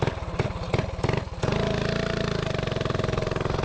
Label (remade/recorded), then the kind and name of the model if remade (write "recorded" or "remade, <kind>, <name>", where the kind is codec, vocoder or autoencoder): recorded